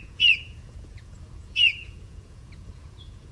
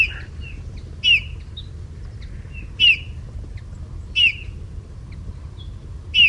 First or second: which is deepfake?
first